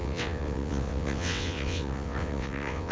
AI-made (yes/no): yes